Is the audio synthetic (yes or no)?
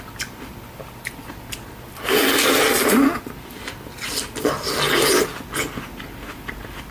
no